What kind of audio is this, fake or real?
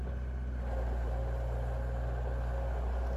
real